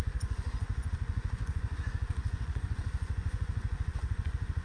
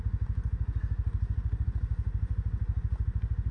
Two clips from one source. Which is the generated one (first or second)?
first